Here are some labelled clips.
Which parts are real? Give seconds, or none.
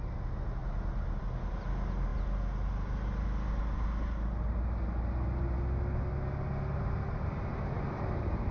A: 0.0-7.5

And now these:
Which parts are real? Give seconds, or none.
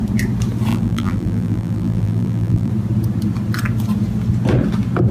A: 0.0-0.7; 2.7-5.1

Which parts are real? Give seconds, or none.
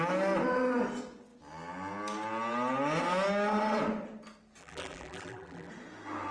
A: 0.0-4.6; 5.7-6.3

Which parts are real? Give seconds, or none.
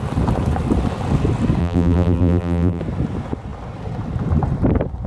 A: 0.0-1.6; 2.8-5.1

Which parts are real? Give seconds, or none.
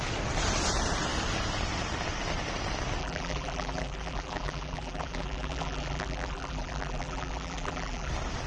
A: 0.0-3.0; 8.1-8.5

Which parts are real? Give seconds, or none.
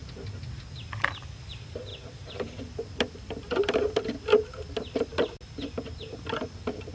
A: 0.0-1.5; 1.9-2.6; 5.1-6.9